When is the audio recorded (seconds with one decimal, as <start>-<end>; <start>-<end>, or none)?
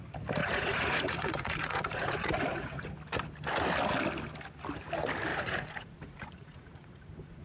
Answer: 0.0-0.4; 2.9-5.3